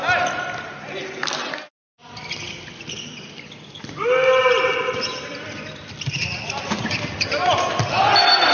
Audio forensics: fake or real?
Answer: real